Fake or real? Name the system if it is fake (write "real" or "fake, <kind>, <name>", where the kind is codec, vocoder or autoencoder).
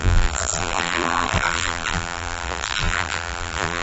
fake, vocoder, BigVGAN v2